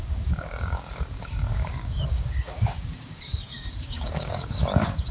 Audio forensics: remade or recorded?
remade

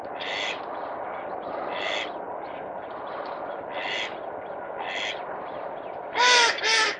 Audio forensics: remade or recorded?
recorded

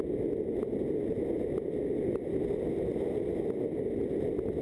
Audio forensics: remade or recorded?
recorded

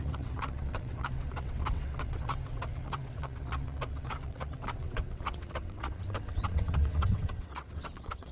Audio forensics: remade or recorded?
remade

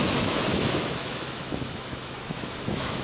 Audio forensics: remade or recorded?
remade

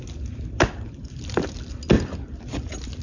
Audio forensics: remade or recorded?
recorded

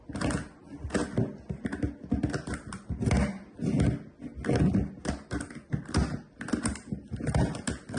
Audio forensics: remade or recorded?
recorded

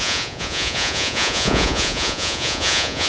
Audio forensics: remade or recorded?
remade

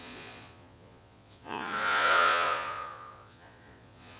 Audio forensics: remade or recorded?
remade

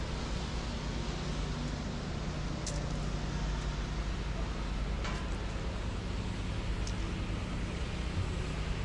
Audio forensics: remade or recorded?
recorded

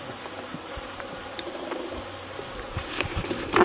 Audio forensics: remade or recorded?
remade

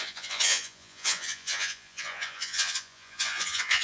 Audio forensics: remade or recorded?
remade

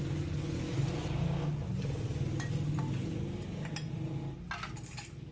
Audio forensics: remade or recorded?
recorded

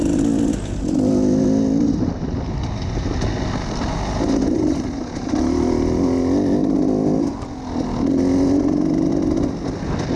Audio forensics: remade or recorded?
recorded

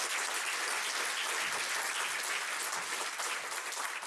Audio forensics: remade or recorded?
recorded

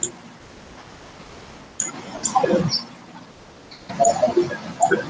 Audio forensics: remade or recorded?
recorded